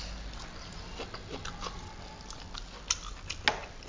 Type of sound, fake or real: real